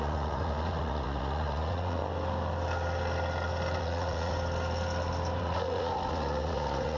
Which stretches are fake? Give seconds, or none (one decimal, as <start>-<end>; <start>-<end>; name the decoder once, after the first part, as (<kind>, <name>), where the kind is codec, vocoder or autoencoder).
0.0-2.0 (vocoder, Vocos); 3.8-4.3; 5.4-7.0